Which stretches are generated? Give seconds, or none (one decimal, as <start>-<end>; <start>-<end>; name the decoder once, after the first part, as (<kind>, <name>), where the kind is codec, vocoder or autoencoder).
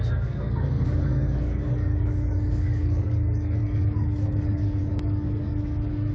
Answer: 0.0-6.1 (codec, DAC)